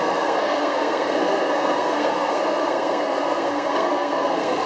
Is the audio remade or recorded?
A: remade